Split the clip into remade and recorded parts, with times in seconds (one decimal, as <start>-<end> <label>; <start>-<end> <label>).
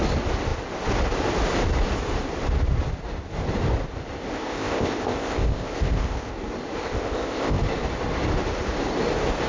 0.0-4.3 recorded; 4.3-6.3 remade; 6.3-6.8 recorded; 6.8-7.6 remade; 7.6-9.5 recorded